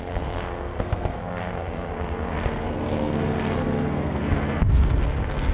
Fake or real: fake